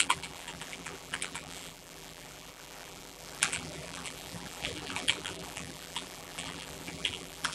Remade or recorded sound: remade